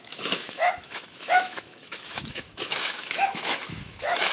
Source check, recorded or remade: remade